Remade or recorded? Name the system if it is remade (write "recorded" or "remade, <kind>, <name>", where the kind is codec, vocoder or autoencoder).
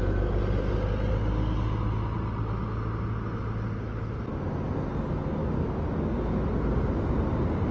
recorded